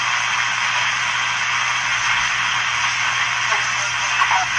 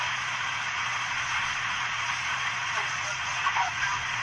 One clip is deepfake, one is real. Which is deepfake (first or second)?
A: second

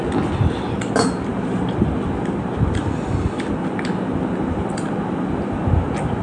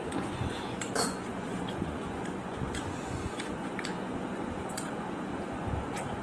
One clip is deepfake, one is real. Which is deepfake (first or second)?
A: second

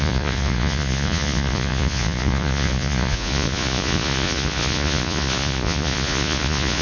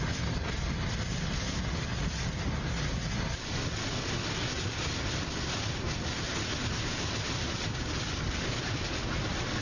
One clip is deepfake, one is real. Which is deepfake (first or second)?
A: first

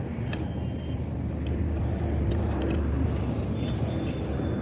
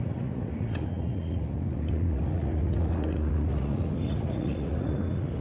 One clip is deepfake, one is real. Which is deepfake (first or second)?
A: second